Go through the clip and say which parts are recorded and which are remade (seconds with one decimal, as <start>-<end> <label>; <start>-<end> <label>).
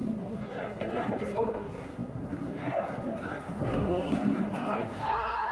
0.0-5.5 remade